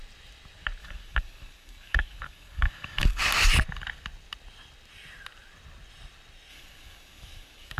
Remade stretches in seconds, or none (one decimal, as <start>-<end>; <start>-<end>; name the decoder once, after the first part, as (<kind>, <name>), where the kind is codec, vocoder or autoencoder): 0.8-3.2 (codec, DAC); 6.5-7.8